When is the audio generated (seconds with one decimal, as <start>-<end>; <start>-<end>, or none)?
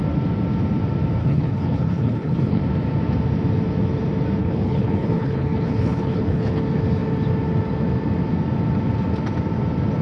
1.2-2.6; 4.4-6.6